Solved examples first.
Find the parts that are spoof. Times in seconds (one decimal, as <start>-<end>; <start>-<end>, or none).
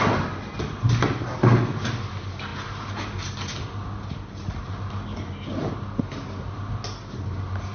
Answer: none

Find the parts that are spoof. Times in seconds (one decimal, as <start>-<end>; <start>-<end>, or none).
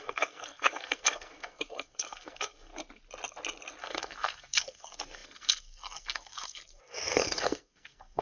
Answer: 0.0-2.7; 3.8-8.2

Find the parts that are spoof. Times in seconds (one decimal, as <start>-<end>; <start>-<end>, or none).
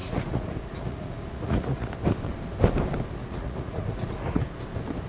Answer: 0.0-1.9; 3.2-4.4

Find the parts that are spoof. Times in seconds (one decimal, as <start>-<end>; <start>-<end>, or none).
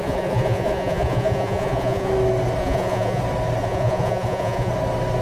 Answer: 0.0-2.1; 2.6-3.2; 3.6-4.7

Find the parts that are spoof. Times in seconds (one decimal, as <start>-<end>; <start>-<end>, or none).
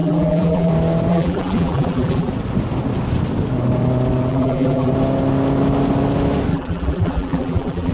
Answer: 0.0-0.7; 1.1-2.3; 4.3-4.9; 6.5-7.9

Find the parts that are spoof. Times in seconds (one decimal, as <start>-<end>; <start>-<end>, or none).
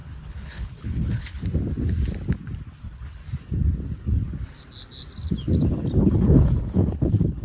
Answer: 0.0-1.4; 2.8-3.2; 6.0-7.4